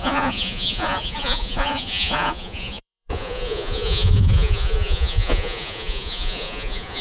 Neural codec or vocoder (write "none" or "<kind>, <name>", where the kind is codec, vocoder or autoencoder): vocoder, Vocos